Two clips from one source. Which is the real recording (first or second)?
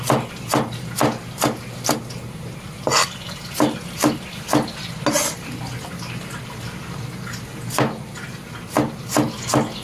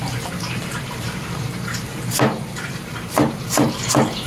first